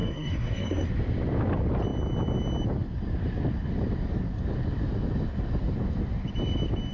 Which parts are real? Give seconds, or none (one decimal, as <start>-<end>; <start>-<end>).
0.9-6.9